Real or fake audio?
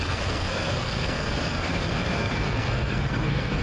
fake